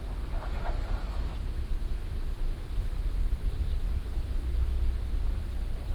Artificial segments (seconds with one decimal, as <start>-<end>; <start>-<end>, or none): 1.0-3.0; 3.8-5.4